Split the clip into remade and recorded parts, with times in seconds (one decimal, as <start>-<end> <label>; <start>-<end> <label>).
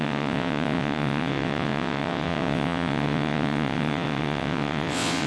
0.0-5.3 remade